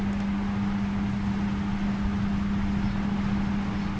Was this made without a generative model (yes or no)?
yes